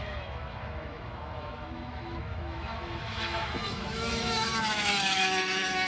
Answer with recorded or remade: remade